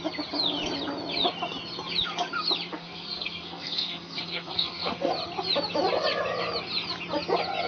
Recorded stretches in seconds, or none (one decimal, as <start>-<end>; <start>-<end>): 0.0-2.7; 5.1-7.7